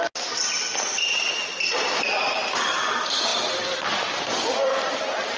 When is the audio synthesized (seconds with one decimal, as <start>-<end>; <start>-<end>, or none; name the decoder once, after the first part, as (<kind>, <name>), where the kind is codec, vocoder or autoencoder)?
none